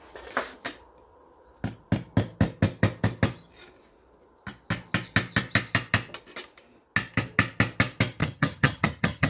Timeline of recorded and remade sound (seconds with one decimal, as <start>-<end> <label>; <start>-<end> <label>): 0.0-8.2 recorded; 8.2-9.3 remade